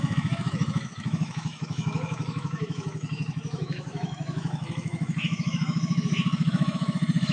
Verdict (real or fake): fake